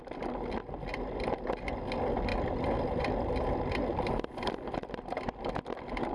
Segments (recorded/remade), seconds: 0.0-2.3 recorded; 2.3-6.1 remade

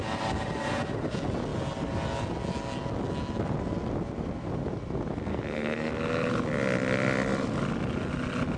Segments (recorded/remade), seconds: 0.0-5.3 recorded; 5.3-5.9 remade; 5.9-8.6 recorded

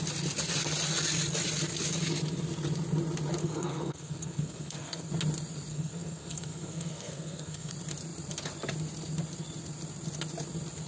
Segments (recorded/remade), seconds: 0.0-3.4 recorded; 3.4-5.1 remade; 5.1-5.7 recorded; 5.7-7.7 remade; 7.7-10.9 recorded

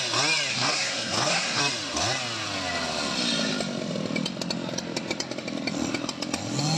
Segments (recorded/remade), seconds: 0.0-0.5 recorded; 0.5-1.6 remade; 1.6-6.8 recorded

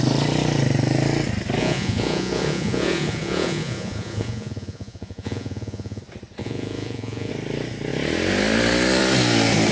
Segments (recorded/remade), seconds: 0.0-1.6 recorded; 1.6-6.0 remade; 6.0-6.4 recorded; 6.4-7.3 remade; 7.3-9.7 recorded

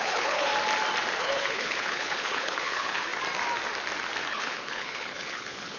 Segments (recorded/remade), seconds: 0.0-0.5 remade; 0.5-1.2 recorded; 1.2-3.1 remade; 3.1-4.3 recorded; 4.3-5.8 remade